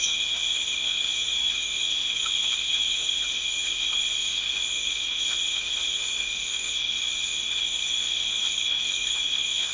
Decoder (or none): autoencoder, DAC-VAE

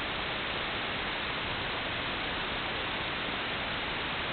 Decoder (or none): none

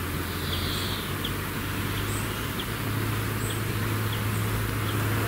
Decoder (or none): none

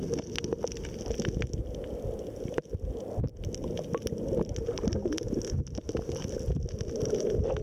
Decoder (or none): none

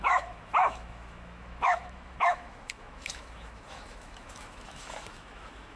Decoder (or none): autoencoder, DAC-VAE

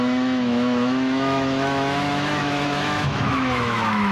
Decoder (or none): autoencoder, DAC-VAE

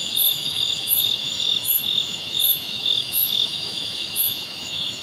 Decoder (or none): autoencoder, DAC-VAE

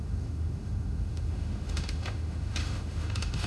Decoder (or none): autoencoder, DAC-VAE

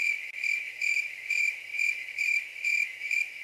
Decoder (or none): autoencoder, DAC-VAE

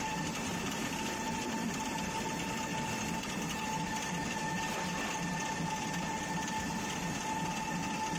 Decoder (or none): none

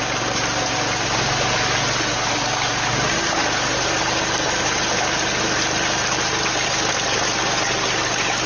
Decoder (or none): none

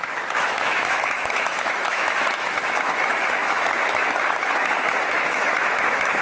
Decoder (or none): autoencoder, DAC-VAE